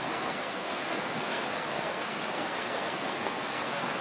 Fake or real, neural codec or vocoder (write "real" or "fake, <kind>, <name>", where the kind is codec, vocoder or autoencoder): fake, codec, SNAC